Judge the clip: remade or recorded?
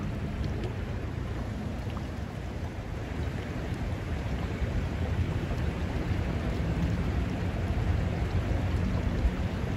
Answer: remade